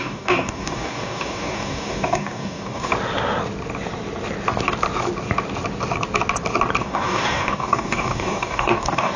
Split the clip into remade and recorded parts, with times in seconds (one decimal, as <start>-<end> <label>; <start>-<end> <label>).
0.0-2.9 remade; 2.9-6.8 recorded; 6.8-9.2 remade